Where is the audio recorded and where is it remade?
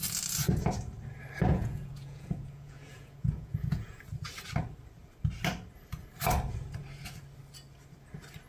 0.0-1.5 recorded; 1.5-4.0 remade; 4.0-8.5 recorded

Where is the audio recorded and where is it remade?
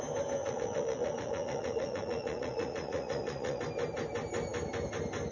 0.0-0.4 recorded; 0.4-3.6 remade; 3.6-5.3 recorded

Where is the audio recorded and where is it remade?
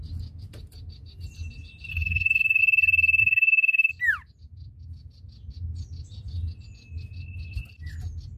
0.0-1.9 recorded; 1.9-2.6 remade; 2.6-3.2 recorded; 3.2-3.9 remade; 3.9-8.4 recorded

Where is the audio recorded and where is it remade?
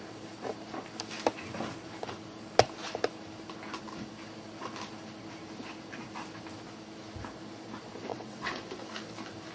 0.0-8.1 recorded; 8.1-8.6 remade; 8.6-9.5 recorded